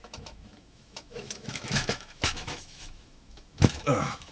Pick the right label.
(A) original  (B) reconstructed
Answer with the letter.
B